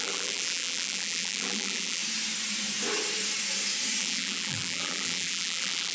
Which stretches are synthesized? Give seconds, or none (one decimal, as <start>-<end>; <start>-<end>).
0.0-2.0; 4.0-5.9